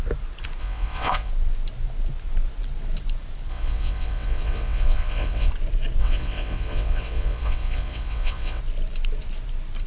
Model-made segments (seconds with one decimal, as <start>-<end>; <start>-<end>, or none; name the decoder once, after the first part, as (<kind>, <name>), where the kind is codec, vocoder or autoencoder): 0.6-1.3 (vocoder, WaveNeXt); 3.5-5.5; 6.0-8.6